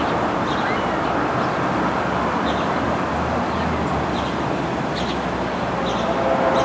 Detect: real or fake real